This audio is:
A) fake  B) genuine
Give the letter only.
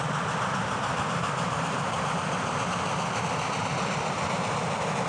A